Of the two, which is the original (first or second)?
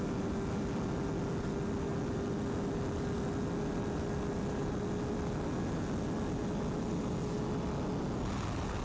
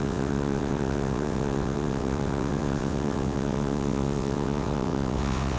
first